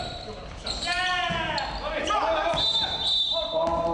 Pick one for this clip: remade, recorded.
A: recorded